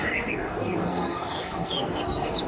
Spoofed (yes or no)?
yes